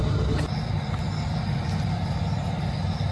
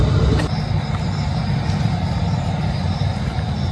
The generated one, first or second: second